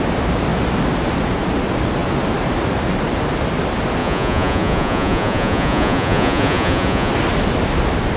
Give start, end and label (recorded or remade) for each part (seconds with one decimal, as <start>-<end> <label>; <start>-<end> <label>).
0.0-4.0 recorded; 4.0-7.1 remade; 7.1-8.2 recorded